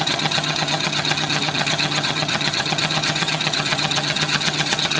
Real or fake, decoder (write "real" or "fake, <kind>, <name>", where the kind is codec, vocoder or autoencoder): fake, vocoder, HiFi-GAN